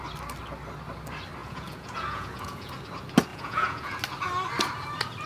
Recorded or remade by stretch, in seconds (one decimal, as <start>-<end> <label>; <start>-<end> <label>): 0.0-1.4 recorded; 1.4-2.7 remade; 2.7-3.3 recorded; 3.3-4.0 remade; 4.0-5.3 recorded